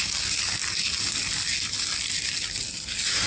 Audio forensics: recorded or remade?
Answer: recorded